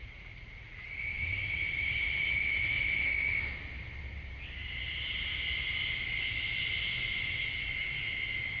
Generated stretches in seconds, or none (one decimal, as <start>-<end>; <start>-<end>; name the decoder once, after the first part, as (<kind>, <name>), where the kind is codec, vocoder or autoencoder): 0.0-1.0 (vocoder, Vocos)